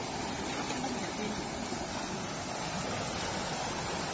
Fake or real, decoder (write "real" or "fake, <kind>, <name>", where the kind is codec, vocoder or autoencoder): real